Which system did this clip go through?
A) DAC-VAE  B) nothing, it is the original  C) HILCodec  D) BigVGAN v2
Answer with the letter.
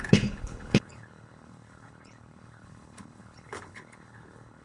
C